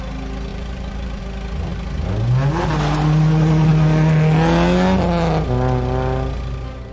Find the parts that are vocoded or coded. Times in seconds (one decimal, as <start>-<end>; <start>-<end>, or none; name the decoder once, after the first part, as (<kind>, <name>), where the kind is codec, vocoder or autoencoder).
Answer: 0.5-1.2 (vocoder, BigVGAN v2)